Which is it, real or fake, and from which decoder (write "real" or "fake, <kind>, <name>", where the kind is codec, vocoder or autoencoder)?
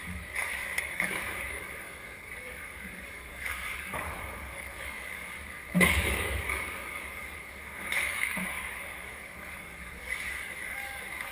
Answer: fake, codec, DAC